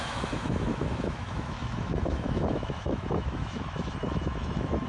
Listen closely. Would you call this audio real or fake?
fake